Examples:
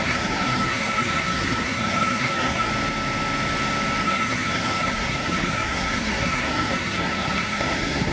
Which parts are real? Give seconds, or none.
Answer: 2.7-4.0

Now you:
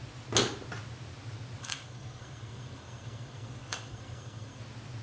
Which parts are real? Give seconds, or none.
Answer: 0.0-1.6; 4.6-5.0

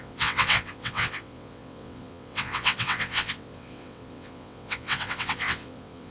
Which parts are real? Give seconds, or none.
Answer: none

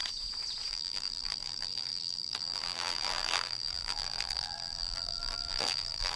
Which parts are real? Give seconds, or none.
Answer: 0.0-0.7

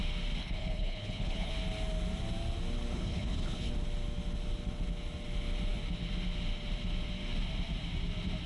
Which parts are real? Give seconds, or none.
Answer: 0.0-0.4; 1.5-2.9; 3.7-8.5